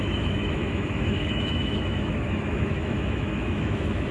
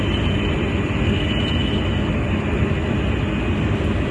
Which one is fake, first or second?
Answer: first